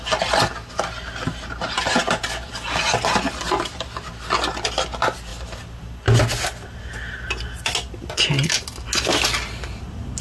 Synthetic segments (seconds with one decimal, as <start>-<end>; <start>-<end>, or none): 5.3-5.9